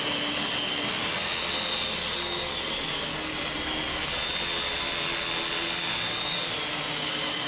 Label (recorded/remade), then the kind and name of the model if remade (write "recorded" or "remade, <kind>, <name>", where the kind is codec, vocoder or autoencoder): recorded